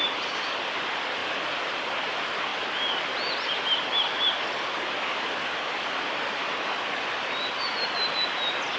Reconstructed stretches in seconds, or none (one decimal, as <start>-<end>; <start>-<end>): none

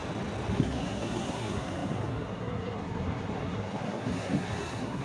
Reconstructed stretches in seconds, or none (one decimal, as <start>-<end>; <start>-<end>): 0.5-5.0

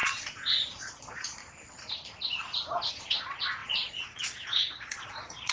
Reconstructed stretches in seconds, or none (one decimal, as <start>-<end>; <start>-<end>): 0.0-1.4; 2.9-5.5

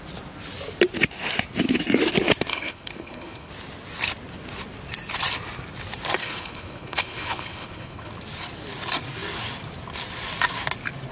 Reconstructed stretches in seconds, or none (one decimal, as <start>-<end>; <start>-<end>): 2.5-3.5; 6.2-8.1

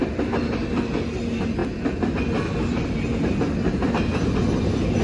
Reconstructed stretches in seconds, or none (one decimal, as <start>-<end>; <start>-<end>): none